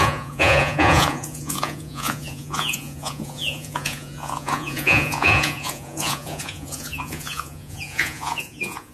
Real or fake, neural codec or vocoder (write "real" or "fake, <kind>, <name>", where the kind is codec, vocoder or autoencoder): fake, vocoder, Vocos